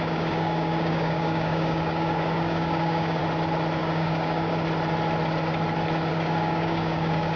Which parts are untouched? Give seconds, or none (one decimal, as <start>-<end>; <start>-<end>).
3.2-3.8; 4.5-6.1